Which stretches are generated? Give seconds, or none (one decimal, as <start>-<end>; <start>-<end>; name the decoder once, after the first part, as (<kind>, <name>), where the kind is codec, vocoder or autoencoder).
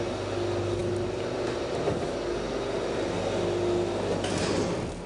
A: none